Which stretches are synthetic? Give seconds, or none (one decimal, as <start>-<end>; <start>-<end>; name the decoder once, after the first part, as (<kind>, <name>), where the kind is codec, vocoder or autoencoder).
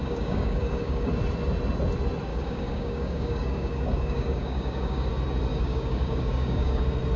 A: 0.0-1.1 (codec, DAC); 2.3-5.1; 5.5-6.8